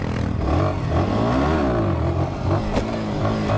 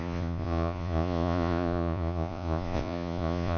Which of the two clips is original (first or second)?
first